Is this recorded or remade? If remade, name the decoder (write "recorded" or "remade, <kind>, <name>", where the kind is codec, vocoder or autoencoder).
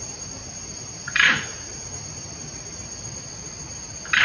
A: recorded